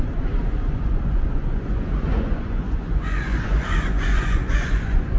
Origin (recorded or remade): remade